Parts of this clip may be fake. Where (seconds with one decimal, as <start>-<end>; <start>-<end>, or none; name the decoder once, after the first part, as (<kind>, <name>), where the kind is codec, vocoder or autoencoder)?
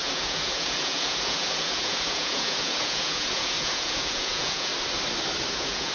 0.0-4.7 (vocoder, Vocos); 5.5-5.9